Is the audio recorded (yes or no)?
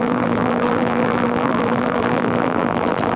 no